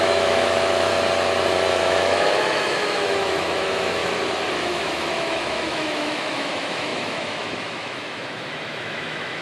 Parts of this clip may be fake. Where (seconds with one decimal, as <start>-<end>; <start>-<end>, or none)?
0.0-0.9; 1.8-4.0; 4.5-9.4